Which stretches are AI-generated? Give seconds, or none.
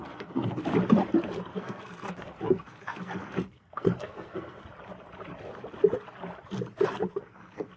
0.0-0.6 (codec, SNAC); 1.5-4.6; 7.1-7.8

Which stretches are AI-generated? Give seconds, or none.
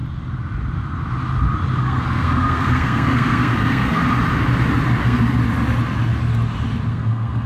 1.8-4.0 (codec, SNAC); 5.0-5.4; 6.9-7.5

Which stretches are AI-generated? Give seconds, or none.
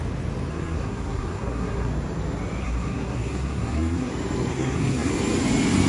0.5-1.9 (codec, SNAC); 2.6-4.1; 4.5-5.1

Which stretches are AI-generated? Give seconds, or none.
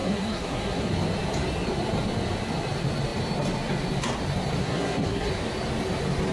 0.0-0.9 (codec, SNAC); 4.6-5.3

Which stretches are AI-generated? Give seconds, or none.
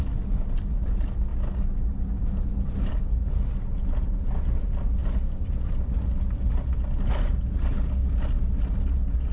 none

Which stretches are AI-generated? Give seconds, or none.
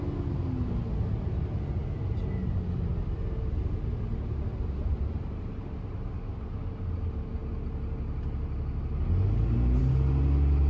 none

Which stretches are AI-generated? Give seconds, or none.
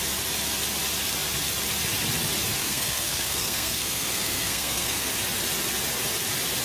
2.6-5.1 (codec, SNAC)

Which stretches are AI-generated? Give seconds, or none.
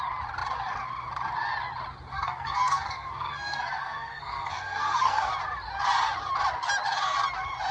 2.1-5.3 (codec, SNAC)